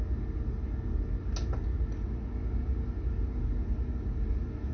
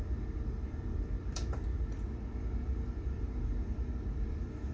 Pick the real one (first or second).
first